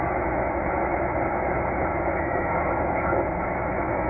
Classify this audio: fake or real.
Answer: fake